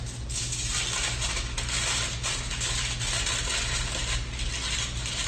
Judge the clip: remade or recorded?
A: recorded